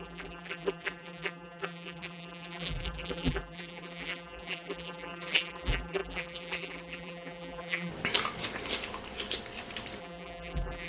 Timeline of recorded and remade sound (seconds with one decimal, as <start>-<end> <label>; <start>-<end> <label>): 0.0-7.9 remade; 7.9-10.0 recorded; 10.0-10.9 remade